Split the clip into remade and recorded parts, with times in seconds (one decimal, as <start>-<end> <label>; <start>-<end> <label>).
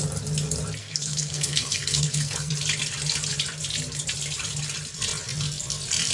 0.0-0.8 recorded; 0.8-2.5 remade; 2.5-6.1 recorded